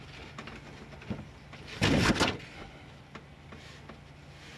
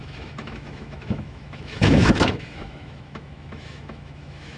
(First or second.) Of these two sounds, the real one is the first